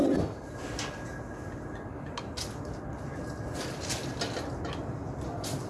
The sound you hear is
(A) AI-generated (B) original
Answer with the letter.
B